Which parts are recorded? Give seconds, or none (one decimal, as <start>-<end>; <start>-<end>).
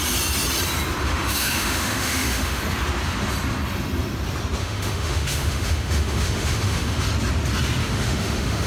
0.0-1.0; 2.6-4.6; 7.0-7.8